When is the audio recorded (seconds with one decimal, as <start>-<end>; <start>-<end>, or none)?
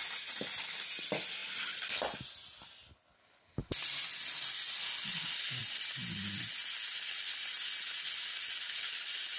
0.0-9.4